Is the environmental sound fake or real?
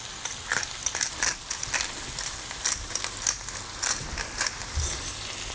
real